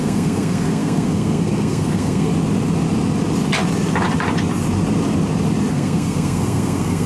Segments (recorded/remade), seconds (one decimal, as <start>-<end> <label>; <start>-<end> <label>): 0.0-2.3 remade; 2.3-5.7 recorded; 5.7-7.1 remade